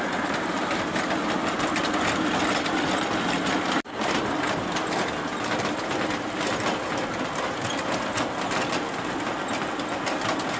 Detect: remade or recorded recorded